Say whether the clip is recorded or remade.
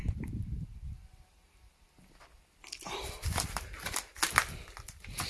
recorded